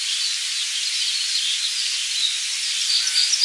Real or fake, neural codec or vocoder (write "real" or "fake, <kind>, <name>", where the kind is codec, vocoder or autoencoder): real